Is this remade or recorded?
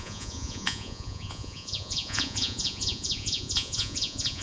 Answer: remade